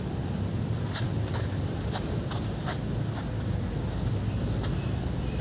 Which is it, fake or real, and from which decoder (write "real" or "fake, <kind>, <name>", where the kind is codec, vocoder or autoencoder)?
real